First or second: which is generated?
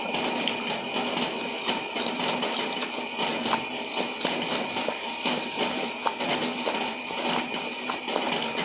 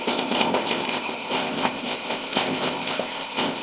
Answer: second